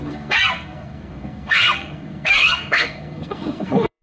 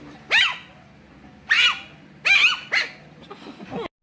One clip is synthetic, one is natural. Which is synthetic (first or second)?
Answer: first